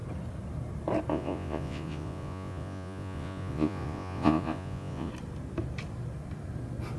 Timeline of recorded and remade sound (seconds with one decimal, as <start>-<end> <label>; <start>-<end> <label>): 0.0-1.1 recorded; 1.1-5.1 remade; 5.1-7.0 recorded